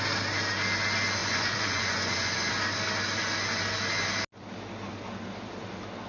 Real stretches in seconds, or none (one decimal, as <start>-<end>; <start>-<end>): 0.0-1.2; 2.5-6.1